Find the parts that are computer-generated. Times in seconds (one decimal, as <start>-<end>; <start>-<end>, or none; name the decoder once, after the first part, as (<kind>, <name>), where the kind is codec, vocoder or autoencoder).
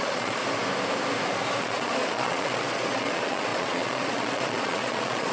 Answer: 0.0-0.4 (vocoder, Vocos); 1.6-5.3